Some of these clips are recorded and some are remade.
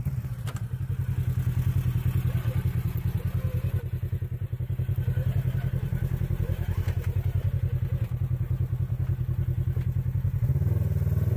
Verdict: recorded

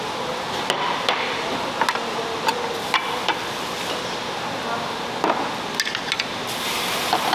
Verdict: recorded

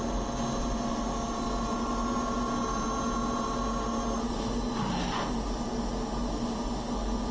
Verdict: recorded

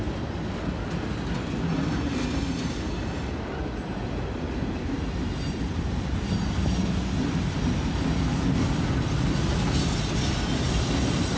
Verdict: recorded